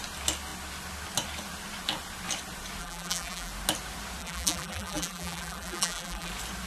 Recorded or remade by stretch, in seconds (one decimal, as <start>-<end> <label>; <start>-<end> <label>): 0.0-2.8 recorded; 2.8-3.5 remade; 3.5-4.2 recorded; 4.2-6.3 remade; 6.3-6.7 recorded